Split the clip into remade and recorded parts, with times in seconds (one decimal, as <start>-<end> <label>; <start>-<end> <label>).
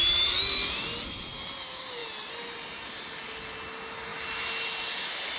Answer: 0.0-5.4 recorded